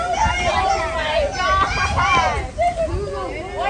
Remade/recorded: recorded